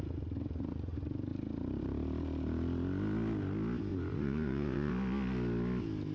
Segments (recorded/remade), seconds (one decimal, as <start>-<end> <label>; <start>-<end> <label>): 0.0-3.9 recorded; 3.9-4.9 remade; 4.9-6.1 recorded